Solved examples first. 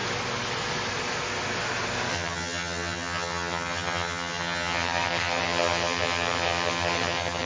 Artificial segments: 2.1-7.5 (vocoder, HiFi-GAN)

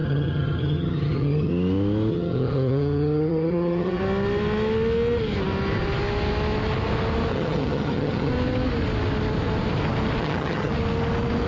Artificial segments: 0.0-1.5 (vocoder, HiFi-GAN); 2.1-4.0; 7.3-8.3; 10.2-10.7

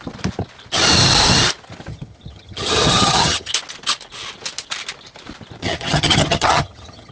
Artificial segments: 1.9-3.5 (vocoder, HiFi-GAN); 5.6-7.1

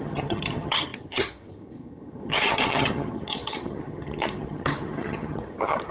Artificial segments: 0.0-5.9 (vocoder, HiFi-GAN)

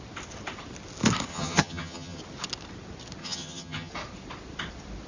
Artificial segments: 1.3-2.2 (vocoder, HiFi-GAN); 3.2-3.9

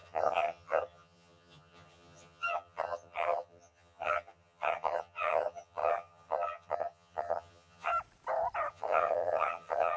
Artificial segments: 0.0-7.9 (vocoder, HiFi-GAN); 8.7-10.0

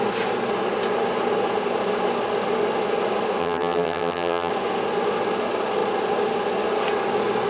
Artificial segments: 3.4-4.5 (vocoder, HiFi-GAN)